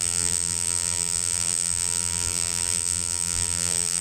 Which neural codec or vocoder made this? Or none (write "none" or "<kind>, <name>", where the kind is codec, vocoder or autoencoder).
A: vocoder, BigVGAN v2